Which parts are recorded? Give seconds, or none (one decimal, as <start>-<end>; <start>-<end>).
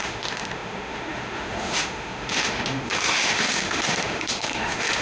none